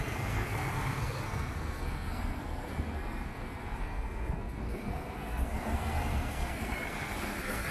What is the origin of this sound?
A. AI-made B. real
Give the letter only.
A